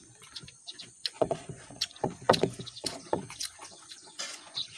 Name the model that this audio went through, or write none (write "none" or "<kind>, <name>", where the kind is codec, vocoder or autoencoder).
vocoder, Vocos